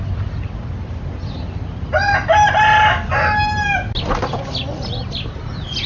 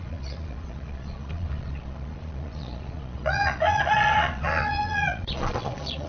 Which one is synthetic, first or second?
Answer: second